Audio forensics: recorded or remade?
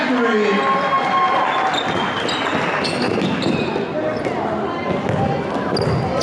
recorded